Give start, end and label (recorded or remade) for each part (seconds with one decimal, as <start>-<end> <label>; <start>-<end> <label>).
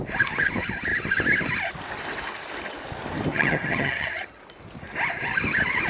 0.0-3.3 recorded; 3.3-4.4 remade; 4.4-5.9 recorded